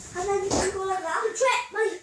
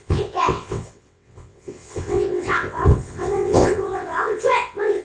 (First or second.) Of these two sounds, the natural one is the first